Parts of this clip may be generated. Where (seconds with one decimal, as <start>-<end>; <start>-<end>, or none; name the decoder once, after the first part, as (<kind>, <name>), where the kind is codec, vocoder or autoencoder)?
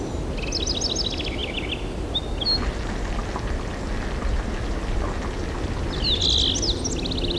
none